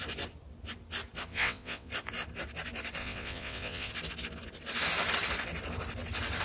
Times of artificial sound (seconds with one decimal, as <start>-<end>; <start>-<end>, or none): 1.3-1.9; 3.0-3.9